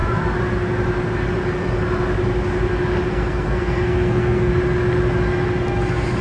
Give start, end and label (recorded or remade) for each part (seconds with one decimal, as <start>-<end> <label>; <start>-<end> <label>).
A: 0.0-3.1 recorded; 3.1-4.5 remade; 4.5-6.2 recorded